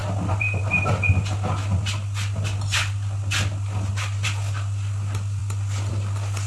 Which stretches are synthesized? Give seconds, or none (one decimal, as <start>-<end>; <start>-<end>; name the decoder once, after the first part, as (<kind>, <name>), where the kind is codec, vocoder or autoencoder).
none